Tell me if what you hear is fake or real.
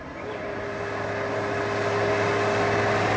real